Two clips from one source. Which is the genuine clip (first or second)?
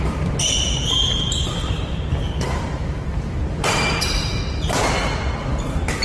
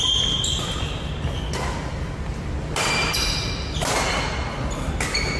second